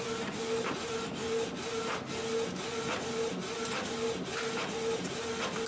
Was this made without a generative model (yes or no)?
yes